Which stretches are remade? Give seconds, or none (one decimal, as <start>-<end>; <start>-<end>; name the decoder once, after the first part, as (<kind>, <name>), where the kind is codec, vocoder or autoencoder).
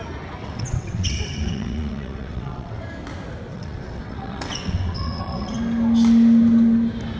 0.4-2.8 (vocoder, WaveNeXt); 3.5-5.6